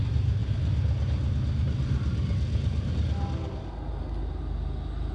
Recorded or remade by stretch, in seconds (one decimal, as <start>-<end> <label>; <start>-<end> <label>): 0.0-5.1 recorded

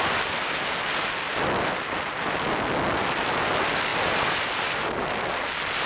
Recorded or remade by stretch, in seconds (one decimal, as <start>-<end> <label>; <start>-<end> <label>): 0.0-5.9 recorded

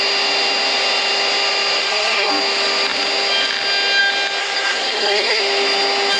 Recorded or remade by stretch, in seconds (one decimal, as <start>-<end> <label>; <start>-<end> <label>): 0.0-1.8 recorded; 1.8-2.3 remade; 2.3-4.4 recorded; 4.4-5.4 remade; 5.4-6.2 recorded

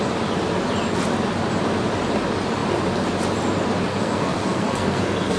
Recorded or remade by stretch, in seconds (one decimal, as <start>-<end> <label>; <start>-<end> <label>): 0.0-3.9 recorded; 3.9-5.4 remade

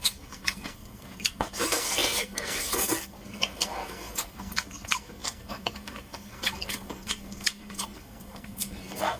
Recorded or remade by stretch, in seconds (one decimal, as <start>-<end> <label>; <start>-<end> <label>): 0.0-9.2 remade